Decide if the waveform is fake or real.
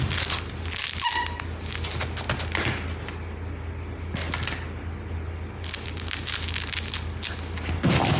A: real